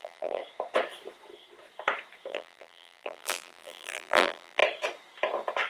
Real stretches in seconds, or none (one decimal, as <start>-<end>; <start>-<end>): 0.4-2.3; 4.6-5.7